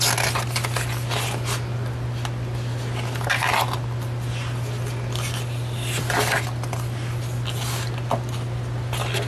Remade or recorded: recorded